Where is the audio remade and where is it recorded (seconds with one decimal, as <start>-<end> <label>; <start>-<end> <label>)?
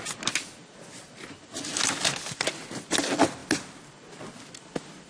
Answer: 0.0-5.1 recorded